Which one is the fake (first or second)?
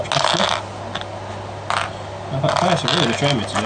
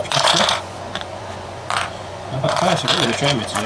second